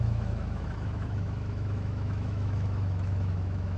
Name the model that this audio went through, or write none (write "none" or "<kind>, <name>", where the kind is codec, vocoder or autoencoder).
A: autoencoder, DAC-VAE